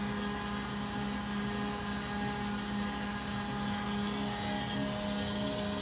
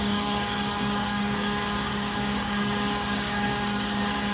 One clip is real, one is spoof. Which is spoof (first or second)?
second